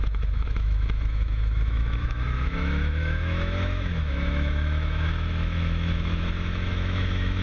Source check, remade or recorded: remade